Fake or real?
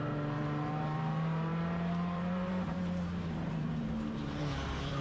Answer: fake